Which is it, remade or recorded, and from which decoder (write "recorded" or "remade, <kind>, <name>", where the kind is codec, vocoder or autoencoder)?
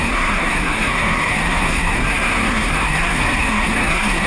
remade, codec, SNAC